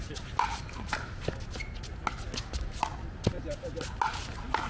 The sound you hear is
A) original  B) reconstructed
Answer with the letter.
A